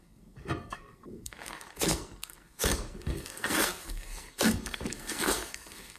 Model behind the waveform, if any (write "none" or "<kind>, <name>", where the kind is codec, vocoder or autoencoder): codec, SNAC